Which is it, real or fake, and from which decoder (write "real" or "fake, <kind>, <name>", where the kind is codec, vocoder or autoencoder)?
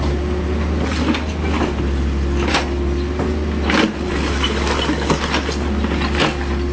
real